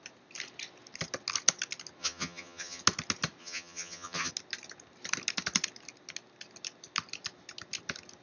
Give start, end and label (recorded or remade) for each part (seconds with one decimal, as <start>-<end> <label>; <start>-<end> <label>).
0.0-2.0 recorded; 2.0-2.8 remade; 2.8-3.4 recorded; 3.4-4.3 remade; 4.3-8.2 recorded